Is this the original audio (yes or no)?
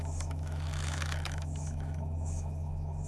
no